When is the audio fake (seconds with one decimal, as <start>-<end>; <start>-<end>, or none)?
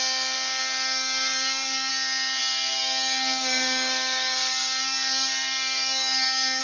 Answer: 0.6-1.9; 2.4-6.6